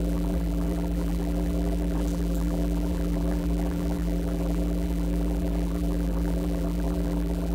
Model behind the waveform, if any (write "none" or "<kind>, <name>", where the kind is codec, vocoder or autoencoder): vocoder, BigVGAN v2